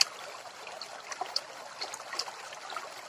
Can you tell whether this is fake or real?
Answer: real